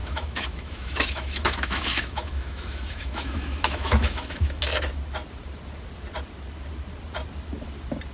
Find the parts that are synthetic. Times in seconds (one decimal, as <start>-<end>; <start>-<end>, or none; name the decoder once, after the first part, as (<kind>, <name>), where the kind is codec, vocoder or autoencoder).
0.0-4.6 (autoencoder, DAC-VAE)